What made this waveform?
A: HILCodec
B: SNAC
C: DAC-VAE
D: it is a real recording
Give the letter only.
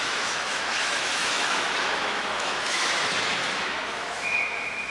C